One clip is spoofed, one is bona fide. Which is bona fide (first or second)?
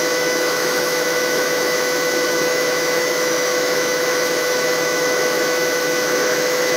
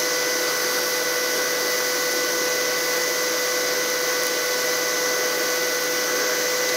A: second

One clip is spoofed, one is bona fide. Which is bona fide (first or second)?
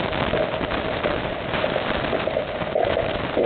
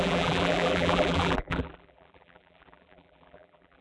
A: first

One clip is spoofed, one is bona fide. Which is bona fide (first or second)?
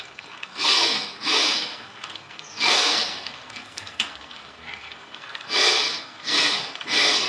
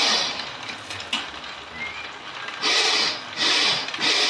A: second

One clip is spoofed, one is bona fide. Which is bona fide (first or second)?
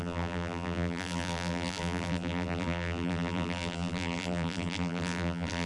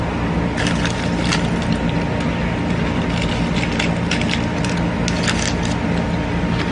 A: second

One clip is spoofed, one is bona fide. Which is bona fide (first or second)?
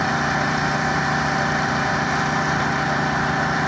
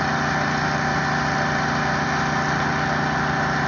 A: second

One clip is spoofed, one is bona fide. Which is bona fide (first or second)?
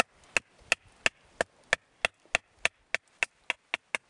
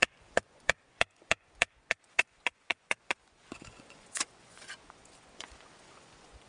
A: first